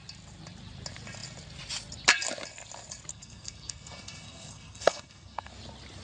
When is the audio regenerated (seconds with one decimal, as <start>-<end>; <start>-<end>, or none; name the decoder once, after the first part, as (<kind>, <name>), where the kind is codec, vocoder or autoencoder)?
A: 3.1-5.5 (codec, SNAC)